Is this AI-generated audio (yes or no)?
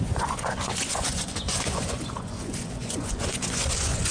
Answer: yes